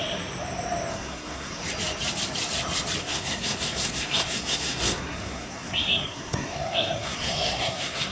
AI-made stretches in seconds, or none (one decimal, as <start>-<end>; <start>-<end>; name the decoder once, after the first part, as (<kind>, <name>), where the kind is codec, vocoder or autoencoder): 0.9-1.6 (codec, SNAC); 3.0-8.1